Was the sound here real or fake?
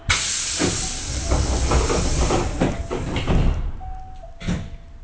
real